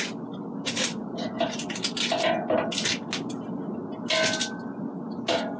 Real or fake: real